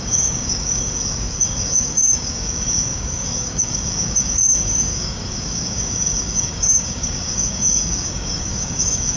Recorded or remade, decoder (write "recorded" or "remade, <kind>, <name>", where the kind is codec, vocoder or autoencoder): remade, codec, DAC